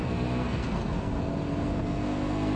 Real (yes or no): no